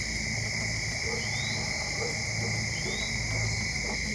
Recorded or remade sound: recorded